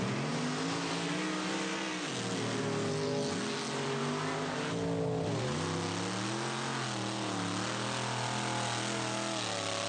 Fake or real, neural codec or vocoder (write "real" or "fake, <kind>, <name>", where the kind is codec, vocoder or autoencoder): real